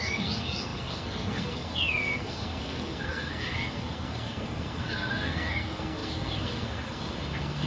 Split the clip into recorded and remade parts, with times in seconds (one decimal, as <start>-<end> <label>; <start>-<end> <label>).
0.0-7.7 remade